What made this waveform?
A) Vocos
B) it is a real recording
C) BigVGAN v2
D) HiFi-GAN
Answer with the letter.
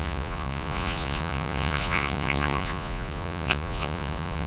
A